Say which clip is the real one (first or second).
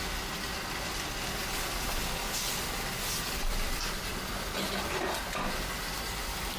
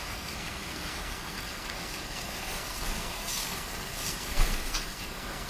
first